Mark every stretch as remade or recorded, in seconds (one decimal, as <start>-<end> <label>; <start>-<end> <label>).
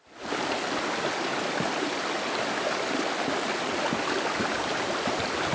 0.0-5.5 recorded